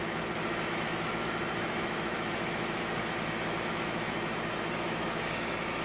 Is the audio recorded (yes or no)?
no